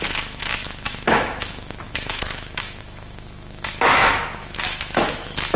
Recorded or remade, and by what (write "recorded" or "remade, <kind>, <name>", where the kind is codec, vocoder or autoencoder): remade, autoencoder, DAC-VAE